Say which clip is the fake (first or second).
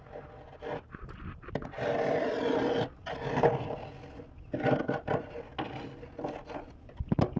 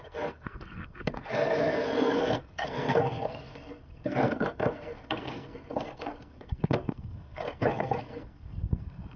second